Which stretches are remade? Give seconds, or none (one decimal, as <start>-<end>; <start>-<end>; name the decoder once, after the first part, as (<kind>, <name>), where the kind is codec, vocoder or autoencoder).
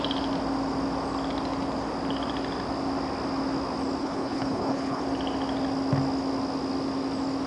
4.0-5.0 (codec, HILCodec)